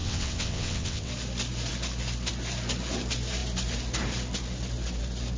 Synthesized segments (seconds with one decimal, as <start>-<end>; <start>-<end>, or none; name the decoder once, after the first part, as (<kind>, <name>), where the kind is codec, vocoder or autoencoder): 0.0-1.1 (vocoder, WaveNeXt)